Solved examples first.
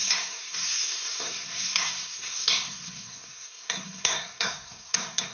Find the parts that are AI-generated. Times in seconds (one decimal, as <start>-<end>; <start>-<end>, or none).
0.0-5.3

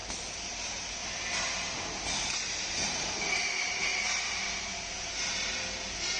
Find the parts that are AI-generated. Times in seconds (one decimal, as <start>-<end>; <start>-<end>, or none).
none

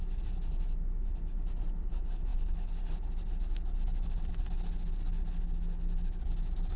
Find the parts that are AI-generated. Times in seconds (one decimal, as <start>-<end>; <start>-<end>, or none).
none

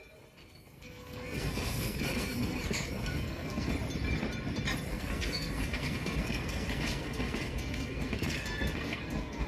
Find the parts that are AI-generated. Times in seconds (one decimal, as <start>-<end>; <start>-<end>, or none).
0.4-3.7; 4.9-9.5

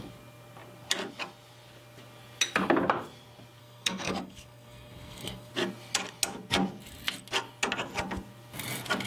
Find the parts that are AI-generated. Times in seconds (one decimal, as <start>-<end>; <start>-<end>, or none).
3.6-5.5

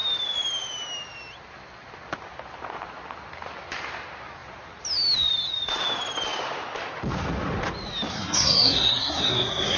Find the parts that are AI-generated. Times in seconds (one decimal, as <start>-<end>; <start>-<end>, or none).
8.1-9.8